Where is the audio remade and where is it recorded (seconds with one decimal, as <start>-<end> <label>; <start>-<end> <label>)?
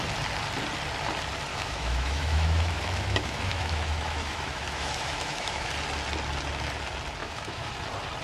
0.0-1.5 recorded; 1.5-5.7 remade; 5.7-7.2 recorded; 7.2-7.7 remade; 7.7-8.2 recorded